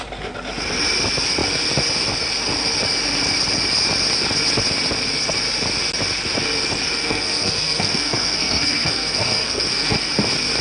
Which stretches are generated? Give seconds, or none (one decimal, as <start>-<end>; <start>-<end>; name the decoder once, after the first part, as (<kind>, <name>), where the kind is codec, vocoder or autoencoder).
7.0-10.1 (codec, SNAC)